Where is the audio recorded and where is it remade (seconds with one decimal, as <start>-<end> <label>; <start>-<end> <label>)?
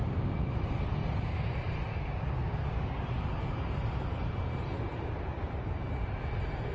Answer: 0.0-1.0 recorded; 1.0-1.5 remade; 1.5-1.9 recorded; 1.9-3.1 remade; 3.1-6.7 recorded